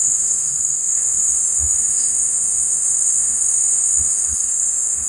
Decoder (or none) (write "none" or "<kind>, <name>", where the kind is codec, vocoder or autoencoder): autoencoder, DAC-VAE